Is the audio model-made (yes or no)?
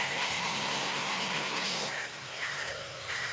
yes